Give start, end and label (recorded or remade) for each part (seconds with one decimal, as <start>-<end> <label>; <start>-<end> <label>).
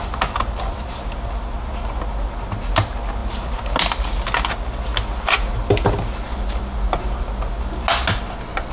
0.0-8.7 recorded